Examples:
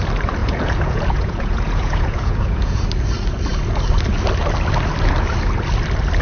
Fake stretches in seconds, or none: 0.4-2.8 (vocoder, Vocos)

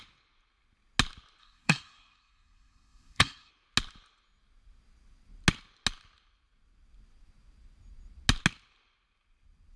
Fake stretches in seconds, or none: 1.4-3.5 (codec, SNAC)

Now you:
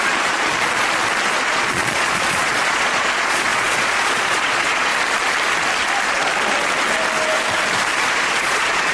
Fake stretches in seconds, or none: 0.0-0.5 (vocoder, Vocos); 1.4-4.9; 8.1-8.9

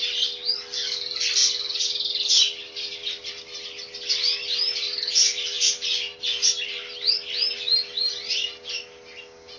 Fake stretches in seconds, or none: none

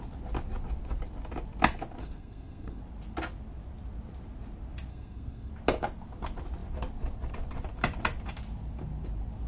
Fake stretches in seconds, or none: 2.0-2.8 (codec, SNAC); 4.9-5.5

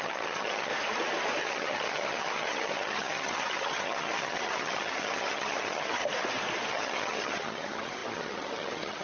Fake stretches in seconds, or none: 0.0-0.7 (vocoder, HiFi-GAN); 1.4-6.0; 6.7-9.0

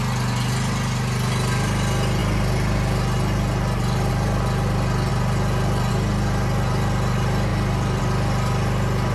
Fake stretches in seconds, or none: 7.5-8.0 (vocoder, BigVGAN v2)